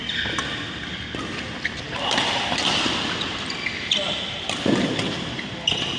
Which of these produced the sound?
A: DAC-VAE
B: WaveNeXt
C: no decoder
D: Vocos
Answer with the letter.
C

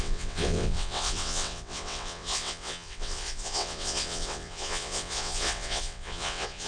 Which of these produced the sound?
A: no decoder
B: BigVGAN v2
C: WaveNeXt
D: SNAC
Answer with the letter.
C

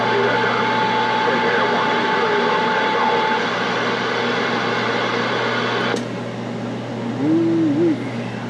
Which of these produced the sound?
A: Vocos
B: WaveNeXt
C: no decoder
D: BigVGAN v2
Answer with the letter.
C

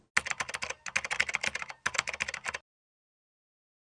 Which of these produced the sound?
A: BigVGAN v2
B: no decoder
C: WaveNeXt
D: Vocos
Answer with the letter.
B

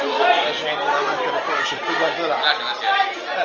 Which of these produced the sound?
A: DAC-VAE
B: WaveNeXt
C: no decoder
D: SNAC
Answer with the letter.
C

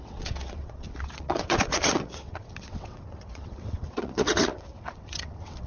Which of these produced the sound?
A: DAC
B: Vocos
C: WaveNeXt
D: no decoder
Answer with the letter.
C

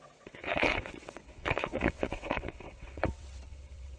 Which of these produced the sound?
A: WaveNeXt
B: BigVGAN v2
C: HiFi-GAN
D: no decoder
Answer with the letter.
A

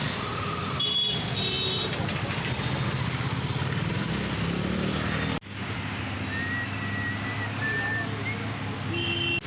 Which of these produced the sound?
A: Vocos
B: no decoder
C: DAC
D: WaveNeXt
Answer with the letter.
B